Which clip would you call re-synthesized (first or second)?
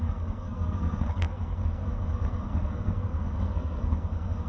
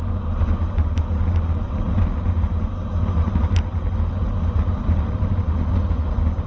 first